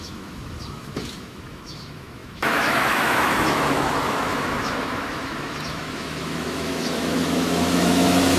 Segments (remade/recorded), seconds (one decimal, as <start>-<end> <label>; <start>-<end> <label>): 0.0-8.4 remade